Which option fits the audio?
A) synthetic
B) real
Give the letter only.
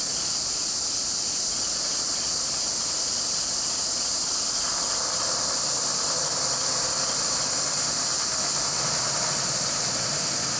B